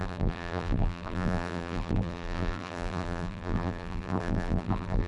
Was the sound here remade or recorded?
remade